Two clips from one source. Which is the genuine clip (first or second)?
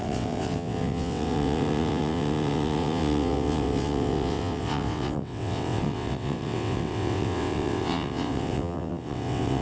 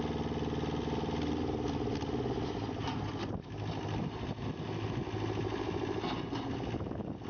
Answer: second